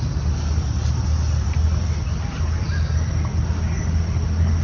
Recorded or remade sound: recorded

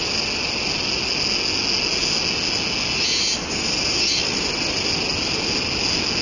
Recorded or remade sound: recorded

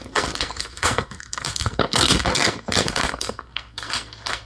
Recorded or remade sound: remade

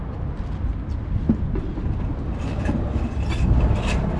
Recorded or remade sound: recorded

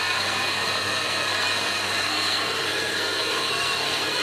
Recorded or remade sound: remade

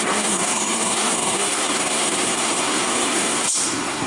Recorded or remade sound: remade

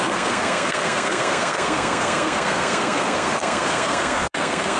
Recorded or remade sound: remade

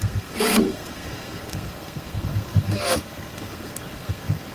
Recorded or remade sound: remade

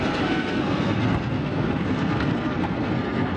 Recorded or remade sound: remade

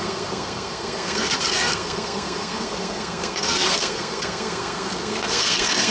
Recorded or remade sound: remade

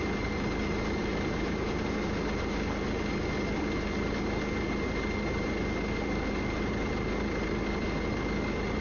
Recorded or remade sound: recorded